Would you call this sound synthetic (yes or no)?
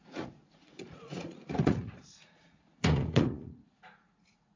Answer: yes